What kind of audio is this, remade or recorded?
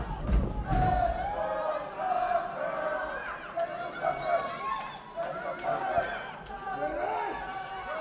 recorded